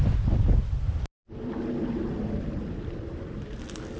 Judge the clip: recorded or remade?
recorded